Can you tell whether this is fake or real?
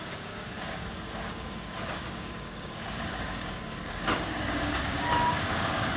fake